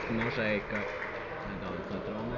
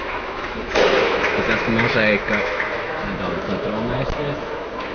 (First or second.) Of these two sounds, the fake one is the second